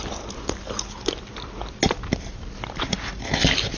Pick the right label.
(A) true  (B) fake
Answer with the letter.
A